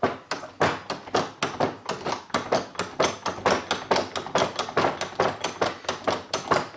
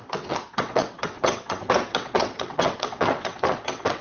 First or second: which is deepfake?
second